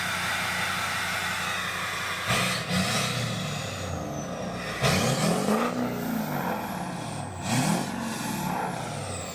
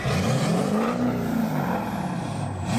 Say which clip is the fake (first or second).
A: second